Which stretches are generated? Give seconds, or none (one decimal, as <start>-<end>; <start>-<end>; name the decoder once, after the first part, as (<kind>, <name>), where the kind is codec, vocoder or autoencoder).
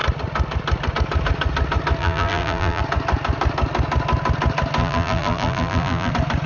2.0-2.8 (vocoder, BigVGAN v2); 4.8-6.1